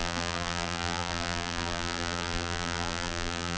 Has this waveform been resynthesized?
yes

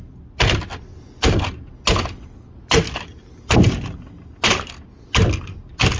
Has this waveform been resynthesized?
no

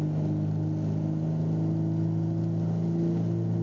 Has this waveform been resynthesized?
no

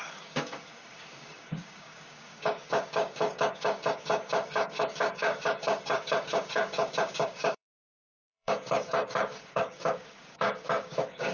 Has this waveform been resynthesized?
yes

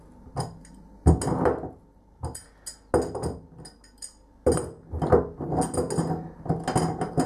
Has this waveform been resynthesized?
no